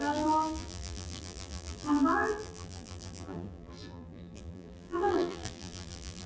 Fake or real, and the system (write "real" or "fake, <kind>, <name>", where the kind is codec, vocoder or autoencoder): fake, vocoder, BigVGAN v2